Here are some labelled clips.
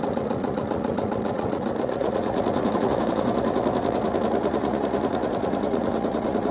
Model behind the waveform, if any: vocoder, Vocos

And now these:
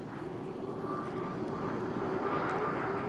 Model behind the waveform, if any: none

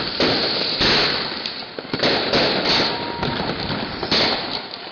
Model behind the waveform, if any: none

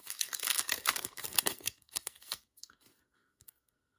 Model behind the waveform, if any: codec, SNAC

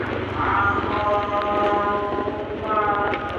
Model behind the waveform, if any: none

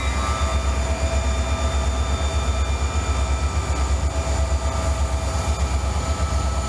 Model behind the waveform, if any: none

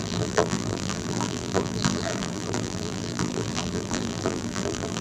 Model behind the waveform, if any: vocoder, BigVGAN v2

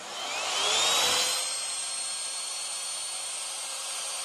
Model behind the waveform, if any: none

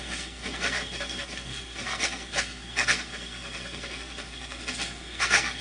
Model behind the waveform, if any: codec, SNAC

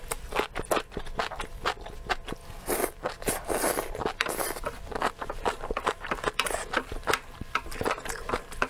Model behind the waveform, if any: none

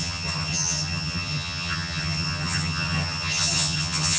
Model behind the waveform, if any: vocoder, HiFi-GAN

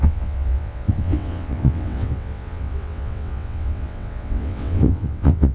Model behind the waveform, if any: vocoder, WaveNeXt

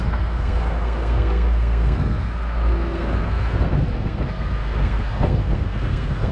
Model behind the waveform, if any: codec, SNAC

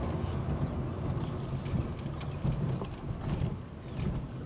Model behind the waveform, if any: none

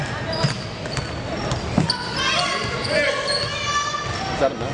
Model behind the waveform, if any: none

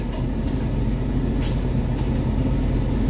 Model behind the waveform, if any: none